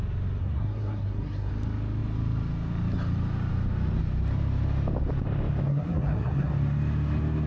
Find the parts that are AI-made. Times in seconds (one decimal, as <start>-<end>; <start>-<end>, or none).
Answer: 0.4-1.5; 5.7-6.5